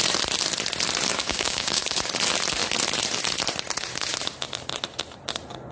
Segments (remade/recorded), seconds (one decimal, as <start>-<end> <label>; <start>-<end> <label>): 0.0-1.2 recorded; 1.2-2.1 remade; 2.1-5.7 recorded